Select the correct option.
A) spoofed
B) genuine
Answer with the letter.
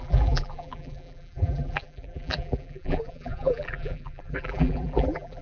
A